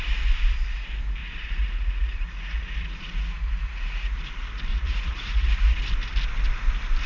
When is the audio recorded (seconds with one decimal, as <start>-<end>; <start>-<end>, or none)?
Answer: 0.0-1.2; 4.2-4.7; 5.8-7.1